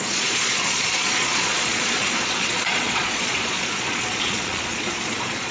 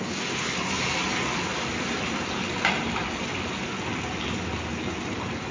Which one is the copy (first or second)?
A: first